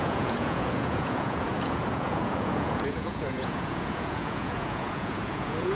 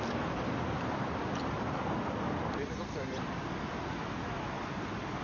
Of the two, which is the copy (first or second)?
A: first